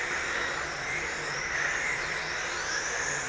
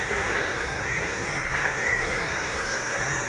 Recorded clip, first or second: first